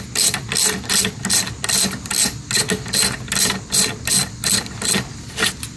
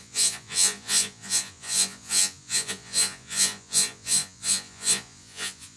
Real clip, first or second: first